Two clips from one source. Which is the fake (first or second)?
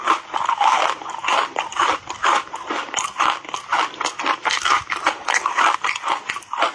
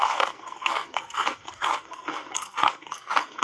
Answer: second